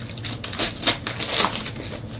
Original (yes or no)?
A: yes